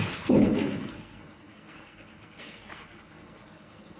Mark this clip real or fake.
fake